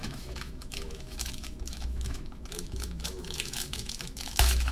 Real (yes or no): no